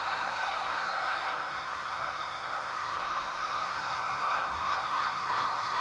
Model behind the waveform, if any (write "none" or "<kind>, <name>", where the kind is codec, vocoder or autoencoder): codec, SNAC